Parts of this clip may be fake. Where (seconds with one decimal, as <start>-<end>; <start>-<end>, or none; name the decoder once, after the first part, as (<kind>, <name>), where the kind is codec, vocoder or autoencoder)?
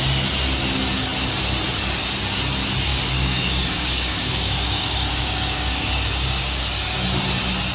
2.9-6.6 (codec, DAC)